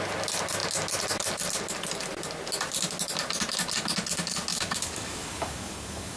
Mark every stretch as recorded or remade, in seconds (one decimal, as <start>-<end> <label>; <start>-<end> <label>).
0.0-4.5 recorded; 4.5-6.2 remade